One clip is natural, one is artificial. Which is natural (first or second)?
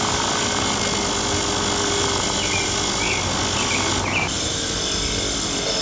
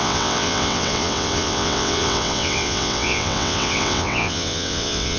first